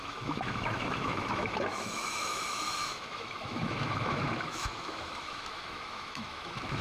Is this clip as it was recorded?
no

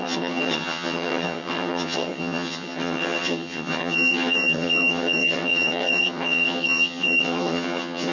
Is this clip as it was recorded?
no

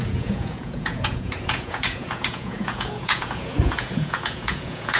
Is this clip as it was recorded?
no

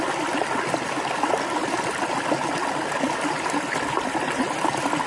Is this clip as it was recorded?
yes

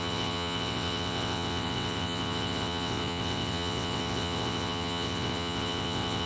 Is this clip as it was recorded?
no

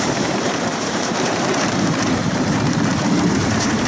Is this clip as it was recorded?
no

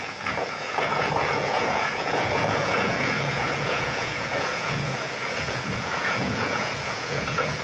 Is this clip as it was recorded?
no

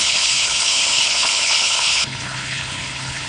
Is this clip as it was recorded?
no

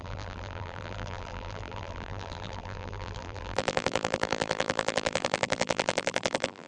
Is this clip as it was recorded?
no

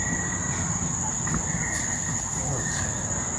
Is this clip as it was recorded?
yes